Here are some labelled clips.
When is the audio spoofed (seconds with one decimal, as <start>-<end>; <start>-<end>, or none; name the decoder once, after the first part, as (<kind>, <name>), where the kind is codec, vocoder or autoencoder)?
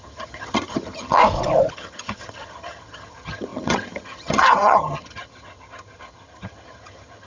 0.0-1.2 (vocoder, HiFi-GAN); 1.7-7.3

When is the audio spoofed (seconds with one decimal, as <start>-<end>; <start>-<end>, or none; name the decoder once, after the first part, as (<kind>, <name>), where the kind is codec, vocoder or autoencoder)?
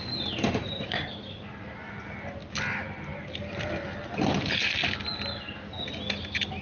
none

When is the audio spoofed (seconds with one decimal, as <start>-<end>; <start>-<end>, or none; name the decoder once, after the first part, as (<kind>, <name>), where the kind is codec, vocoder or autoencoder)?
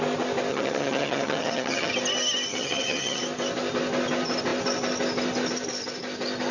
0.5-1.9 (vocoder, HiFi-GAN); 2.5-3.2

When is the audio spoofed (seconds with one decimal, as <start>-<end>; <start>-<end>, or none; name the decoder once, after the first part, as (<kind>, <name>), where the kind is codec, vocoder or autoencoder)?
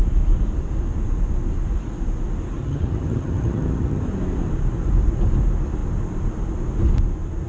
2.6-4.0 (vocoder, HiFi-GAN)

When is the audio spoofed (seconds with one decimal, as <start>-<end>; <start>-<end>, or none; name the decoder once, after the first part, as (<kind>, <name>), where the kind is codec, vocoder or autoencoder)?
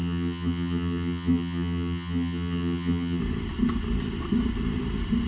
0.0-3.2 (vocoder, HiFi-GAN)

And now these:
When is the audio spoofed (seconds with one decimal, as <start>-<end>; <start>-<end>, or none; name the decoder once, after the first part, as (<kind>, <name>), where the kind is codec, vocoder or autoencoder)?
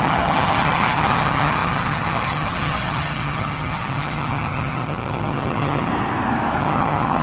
0.0-5.9 (vocoder, HiFi-GAN); 6.6-7.2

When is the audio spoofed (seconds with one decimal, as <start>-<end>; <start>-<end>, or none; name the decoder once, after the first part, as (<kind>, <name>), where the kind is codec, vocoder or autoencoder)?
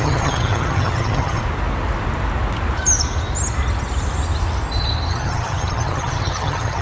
0.0-1.4 (vocoder, HiFi-GAN); 5.1-6.8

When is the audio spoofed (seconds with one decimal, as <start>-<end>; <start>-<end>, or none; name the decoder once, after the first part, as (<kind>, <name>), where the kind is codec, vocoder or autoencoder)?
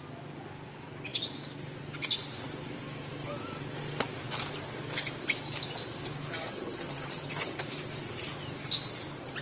6.4-7.6 (vocoder, HiFi-GAN)